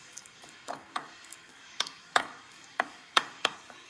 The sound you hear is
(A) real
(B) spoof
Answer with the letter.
B